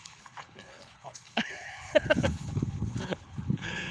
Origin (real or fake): fake